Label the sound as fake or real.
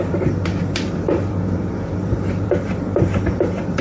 fake